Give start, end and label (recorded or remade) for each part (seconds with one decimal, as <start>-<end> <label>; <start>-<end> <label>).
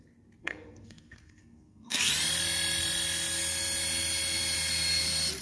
0.0-0.4 recorded; 0.4-2.1 remade; 2.1-5.4 recorded